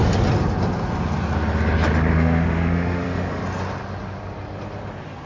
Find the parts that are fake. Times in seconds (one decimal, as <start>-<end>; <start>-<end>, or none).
2.1-3.4